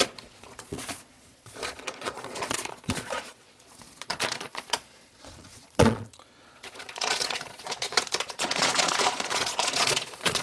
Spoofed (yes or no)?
yes